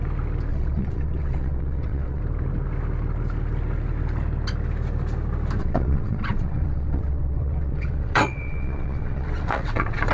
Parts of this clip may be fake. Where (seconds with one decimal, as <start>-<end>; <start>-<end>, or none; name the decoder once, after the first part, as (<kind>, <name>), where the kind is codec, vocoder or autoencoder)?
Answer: 0.5-2.2 (vocoder, WaveNeXt); 5.6-10.1